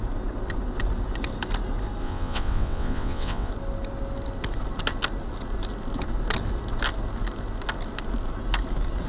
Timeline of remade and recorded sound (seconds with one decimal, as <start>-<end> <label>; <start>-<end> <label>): 0.0-2.0 recorded; 2.0-3.5 remade; 3.5-9.1 recorded